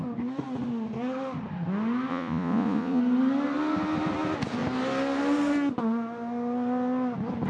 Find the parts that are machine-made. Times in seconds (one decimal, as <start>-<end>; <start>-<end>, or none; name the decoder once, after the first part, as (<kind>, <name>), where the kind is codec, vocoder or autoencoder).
2.1-3.0 (vocoder, Vocos)